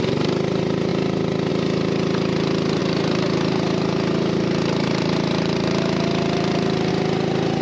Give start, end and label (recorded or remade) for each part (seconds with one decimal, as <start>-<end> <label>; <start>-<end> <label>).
0.0-2.8 recorded; 2.8-6.9 remade; 6.9-7.6 recorded